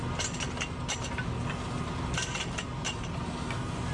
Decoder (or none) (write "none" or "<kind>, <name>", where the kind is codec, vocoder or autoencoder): none